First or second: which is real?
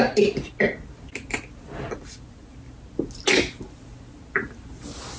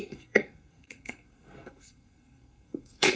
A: first